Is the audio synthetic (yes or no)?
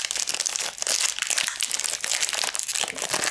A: no